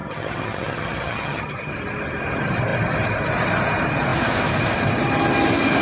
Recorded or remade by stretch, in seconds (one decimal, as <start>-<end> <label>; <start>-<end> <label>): 0.0-1.7 remade; 1.7-5.8 recorded

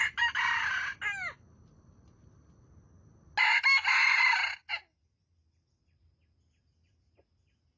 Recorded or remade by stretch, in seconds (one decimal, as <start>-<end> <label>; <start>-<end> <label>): 0.0-7.8 recorded